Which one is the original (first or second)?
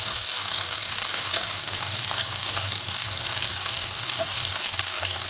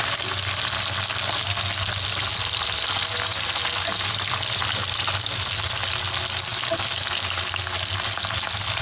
second